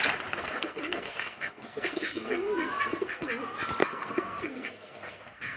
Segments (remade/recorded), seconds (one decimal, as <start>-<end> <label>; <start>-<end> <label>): 0.0-0.4 recorded; 0.4-3.3 remade; 3.3-3.8 recorded; 3.8-5.6 remade